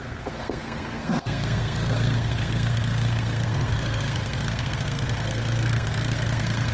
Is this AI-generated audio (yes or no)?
yes